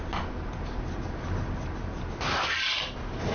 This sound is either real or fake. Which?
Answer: real